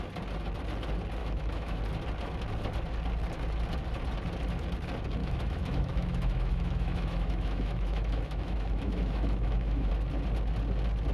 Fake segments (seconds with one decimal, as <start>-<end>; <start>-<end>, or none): 1.2-1.8; 5.2-9.9